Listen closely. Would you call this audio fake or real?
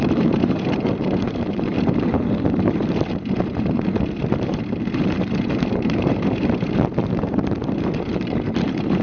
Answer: fake